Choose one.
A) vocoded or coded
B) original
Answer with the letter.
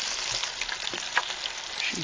B